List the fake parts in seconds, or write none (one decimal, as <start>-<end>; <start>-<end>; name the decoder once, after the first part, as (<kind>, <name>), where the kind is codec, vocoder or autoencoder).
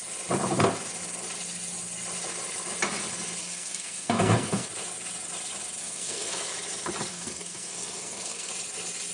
3.4-4.7 (codec, SNAC); 5.8-6.4; 7.1-8.5